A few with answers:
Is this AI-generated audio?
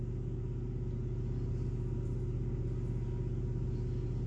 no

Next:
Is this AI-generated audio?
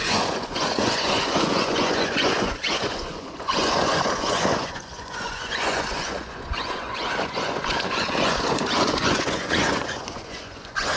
yes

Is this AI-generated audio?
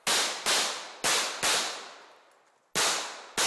no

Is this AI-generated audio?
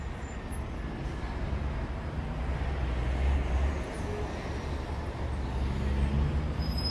no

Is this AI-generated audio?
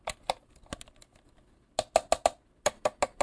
no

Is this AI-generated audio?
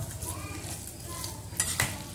no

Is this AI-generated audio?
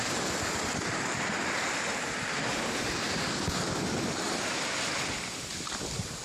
no